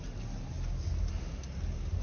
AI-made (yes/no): no